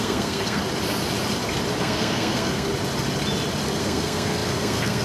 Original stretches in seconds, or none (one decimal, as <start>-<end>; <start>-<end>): 0.6-1.8; 2.7-3.8